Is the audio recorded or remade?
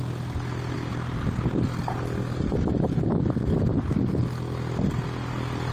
recorded